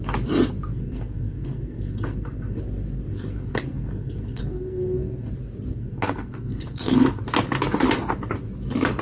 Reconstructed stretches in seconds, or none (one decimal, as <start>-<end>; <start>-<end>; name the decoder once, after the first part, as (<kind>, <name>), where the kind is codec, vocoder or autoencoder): 0.7-2.6 (codec, SNAC); 3.1-5.3; 5.7-7.2